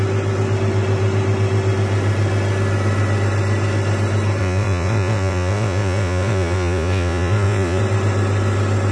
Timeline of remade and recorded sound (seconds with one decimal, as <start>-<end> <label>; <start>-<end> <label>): 0.0-4.4 recorded; 4.4-7.8 remade; 7.8-8.9 recorded